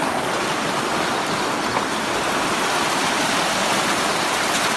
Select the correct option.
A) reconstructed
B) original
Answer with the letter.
B